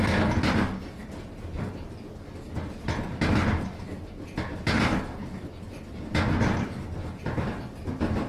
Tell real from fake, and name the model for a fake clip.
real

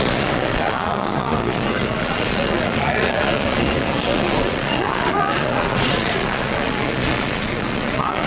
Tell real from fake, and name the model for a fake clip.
fake, vocoder, Vocos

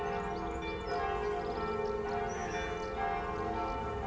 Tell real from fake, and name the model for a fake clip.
real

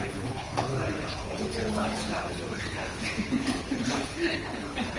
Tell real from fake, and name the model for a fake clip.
fake, codec, HILCodec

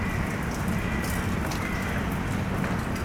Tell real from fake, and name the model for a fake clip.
real